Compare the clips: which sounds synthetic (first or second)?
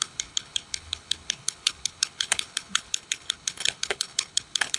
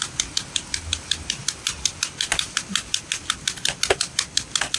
first